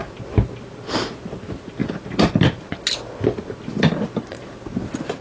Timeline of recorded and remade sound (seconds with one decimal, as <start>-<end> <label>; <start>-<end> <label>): 0.0-5.2 recorded